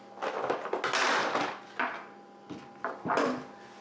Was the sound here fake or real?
real